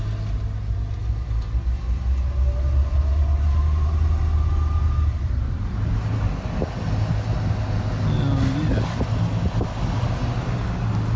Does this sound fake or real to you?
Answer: real